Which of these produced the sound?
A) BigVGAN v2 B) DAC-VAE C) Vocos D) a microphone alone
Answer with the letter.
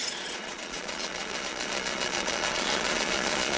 C